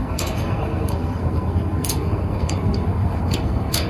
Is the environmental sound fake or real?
fake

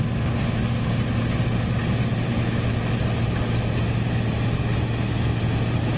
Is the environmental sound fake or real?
real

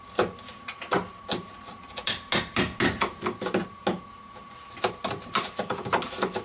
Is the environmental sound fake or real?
real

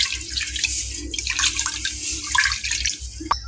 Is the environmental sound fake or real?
real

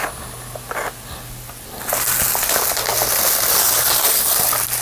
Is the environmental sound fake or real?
real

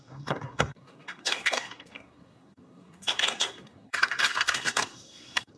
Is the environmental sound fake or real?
fake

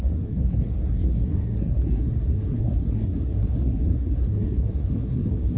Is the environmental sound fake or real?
fake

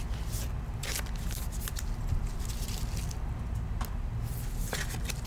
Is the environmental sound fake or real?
real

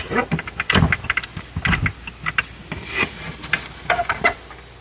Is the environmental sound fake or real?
real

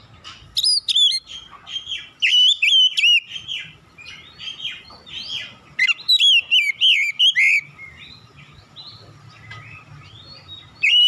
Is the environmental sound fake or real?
real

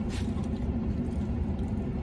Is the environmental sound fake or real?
real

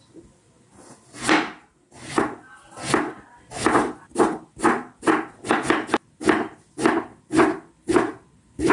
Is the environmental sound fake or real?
real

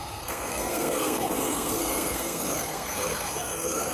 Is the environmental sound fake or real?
fake